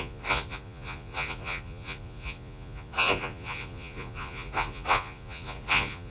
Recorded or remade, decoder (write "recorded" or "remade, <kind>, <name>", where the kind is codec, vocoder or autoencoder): remade, vocoder, Vocos